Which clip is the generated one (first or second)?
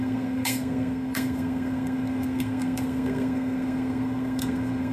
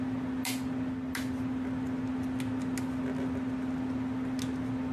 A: first